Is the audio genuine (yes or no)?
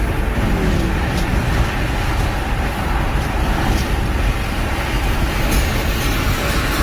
yes